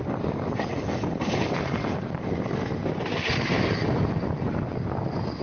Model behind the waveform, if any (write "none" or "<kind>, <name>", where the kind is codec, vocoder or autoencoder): none